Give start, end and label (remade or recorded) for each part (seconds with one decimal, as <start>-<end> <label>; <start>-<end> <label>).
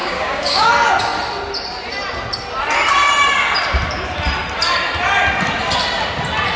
0.0-0.7 remade; 0.7-6.6 recorded